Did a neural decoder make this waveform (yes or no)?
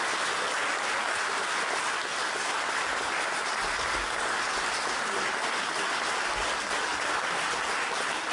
no